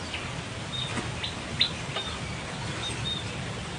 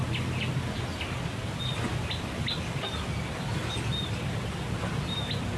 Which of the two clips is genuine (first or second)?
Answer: first